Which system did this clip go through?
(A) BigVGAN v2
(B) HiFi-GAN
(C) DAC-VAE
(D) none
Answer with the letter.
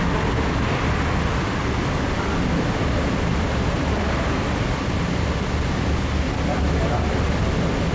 D